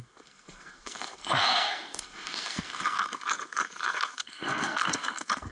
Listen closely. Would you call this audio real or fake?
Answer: fake